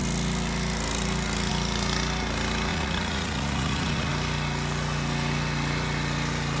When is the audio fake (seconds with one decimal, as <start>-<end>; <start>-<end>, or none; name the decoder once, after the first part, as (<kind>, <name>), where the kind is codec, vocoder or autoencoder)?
2.7-4.1 (vocoder, Vocos)